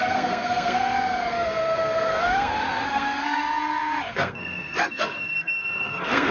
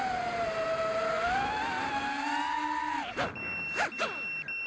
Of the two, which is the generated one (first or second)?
first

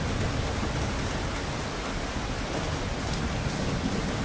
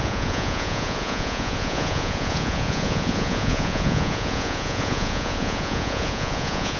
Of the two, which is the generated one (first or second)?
second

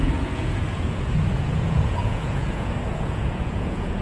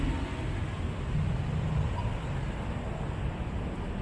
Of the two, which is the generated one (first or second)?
first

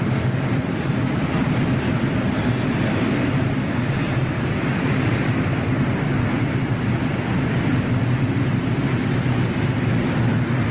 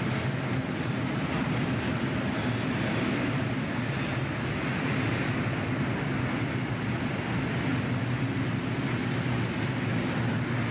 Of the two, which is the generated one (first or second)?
first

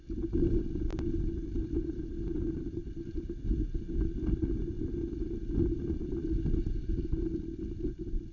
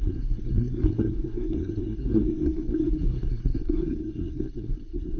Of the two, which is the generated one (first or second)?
second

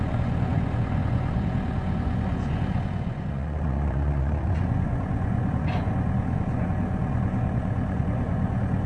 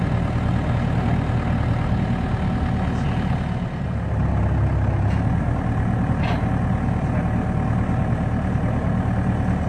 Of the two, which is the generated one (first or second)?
first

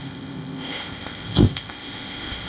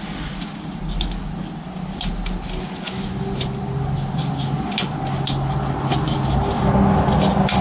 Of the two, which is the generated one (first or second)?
first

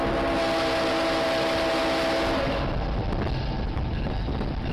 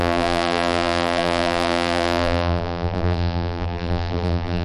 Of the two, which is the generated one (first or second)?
second